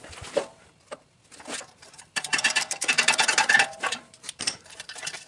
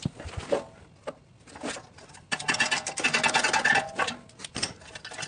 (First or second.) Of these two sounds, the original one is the second